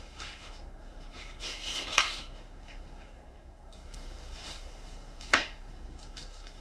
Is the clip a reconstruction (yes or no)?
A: yes